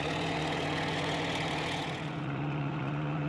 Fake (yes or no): yes